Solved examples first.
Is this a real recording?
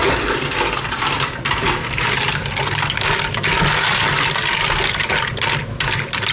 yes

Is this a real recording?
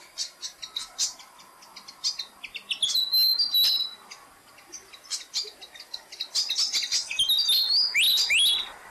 yes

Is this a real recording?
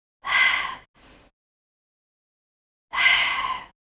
yes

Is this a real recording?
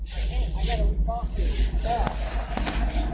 yes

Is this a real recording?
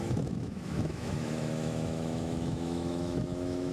no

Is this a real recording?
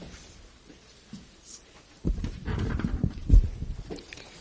no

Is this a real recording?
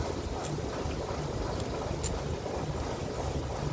yes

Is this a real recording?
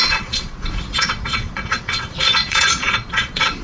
no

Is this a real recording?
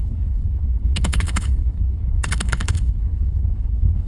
no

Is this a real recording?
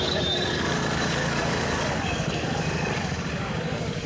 no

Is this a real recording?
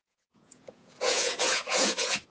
no